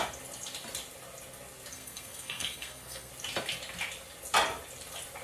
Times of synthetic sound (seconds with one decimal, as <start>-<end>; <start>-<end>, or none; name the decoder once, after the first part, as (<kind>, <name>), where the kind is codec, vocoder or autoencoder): 1.7-3.1 (codec, SNAC)